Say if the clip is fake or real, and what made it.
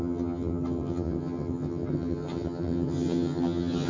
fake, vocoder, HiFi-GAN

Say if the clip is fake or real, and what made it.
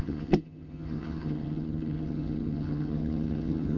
fake, vocoder, HiFi-GAN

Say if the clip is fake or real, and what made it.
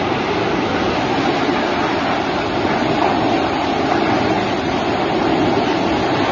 real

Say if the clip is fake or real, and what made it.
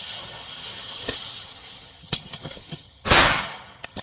fake, vocoder, HiFi-GAN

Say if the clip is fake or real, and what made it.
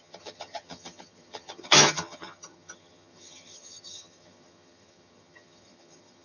fake, vocoder, HiFi-GAN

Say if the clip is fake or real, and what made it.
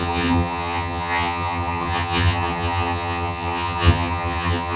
fake, vocoder, HiFi-GAN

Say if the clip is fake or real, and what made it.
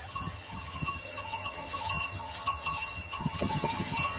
fake, vocoder, HiFi-GAN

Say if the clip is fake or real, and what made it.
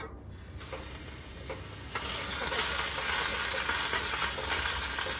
real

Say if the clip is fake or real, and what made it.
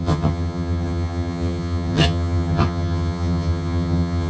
fake, vocoder, HiFi-GAN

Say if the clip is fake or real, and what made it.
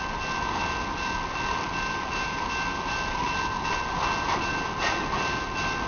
real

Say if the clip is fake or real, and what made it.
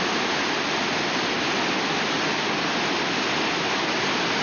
real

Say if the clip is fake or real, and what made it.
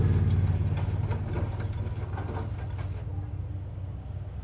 real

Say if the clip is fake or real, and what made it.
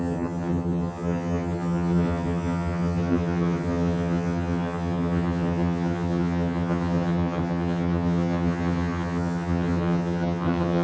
fake, vocoder, HiFi-GAN